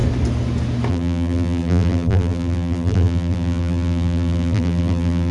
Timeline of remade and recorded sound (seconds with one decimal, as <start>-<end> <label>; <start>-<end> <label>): 0.0-0.9 recorded; 0.9-5.3 remade